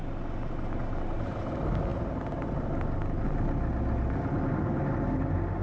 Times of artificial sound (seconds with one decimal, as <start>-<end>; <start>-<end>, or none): none